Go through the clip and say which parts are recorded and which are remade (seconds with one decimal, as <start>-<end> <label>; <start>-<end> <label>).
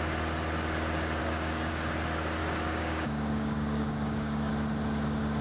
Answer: 0.0-1.2 recorded; 1.2-1.7 remade; 1.7-2.4 recorded; 2.4-4.5 remade; 4.5-5.4 recorded